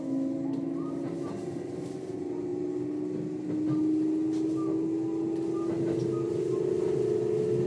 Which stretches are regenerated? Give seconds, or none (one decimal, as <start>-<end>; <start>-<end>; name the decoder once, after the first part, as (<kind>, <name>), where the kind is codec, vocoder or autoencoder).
none